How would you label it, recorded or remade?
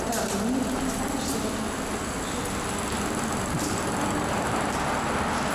recorded